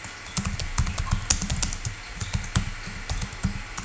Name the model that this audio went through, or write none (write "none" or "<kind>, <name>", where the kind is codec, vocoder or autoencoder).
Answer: none